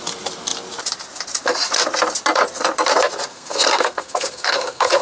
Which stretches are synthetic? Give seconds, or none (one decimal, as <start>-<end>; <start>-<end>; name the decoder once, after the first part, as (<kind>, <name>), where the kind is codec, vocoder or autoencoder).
3.3-5.0 (codec, SNAC)